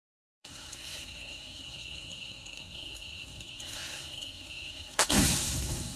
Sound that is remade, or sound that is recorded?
remade